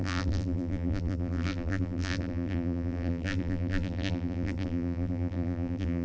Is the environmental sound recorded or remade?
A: remade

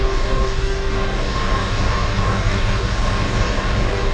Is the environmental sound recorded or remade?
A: remade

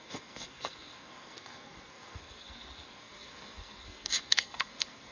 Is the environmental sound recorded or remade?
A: remade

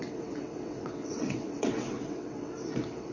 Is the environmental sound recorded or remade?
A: remade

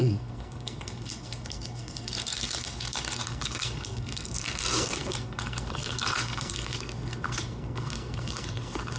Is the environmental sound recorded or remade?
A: remade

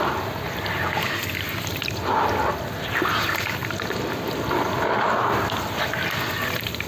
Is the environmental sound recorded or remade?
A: recorded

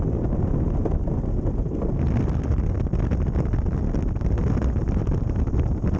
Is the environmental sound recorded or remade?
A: recorded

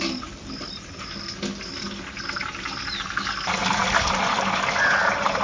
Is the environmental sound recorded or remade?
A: recorded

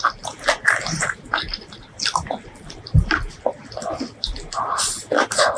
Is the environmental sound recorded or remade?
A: recorded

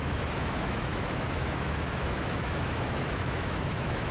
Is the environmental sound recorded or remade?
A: remade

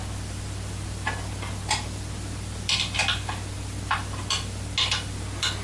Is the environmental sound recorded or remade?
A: recorded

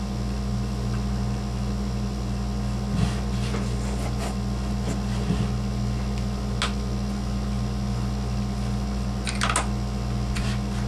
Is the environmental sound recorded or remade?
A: recorded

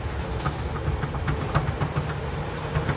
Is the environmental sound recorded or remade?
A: recorded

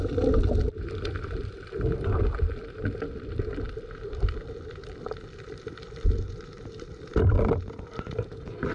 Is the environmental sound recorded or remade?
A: remade